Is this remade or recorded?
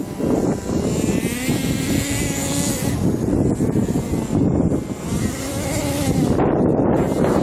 recorded